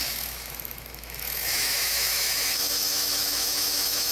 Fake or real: fake